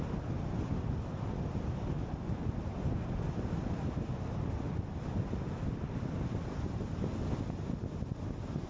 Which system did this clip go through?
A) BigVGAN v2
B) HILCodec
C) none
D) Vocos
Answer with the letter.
C